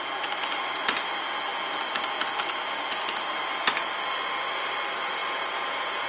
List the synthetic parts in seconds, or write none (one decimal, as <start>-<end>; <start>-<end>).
5.2-6.1